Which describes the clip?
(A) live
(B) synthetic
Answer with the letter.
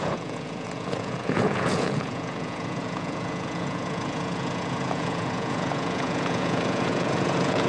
B